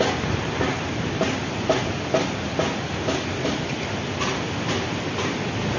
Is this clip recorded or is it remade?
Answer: recorded